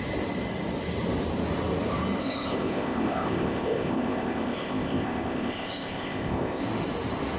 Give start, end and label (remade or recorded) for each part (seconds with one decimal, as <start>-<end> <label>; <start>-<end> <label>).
0.0-2.2 recorded; 2.2-6.6 remade; 6.6-7.4 recorded